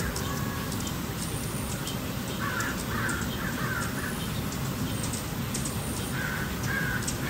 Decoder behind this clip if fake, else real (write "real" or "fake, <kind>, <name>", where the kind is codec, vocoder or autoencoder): real